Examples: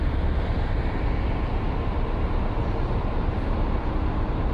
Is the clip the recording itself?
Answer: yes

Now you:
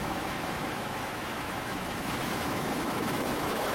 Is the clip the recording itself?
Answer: no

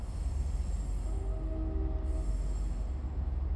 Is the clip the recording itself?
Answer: yes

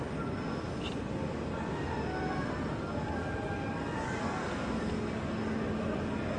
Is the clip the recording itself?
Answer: yes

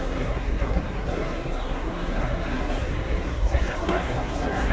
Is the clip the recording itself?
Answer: no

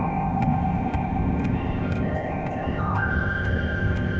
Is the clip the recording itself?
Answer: no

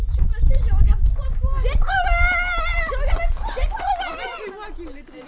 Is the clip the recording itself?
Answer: yes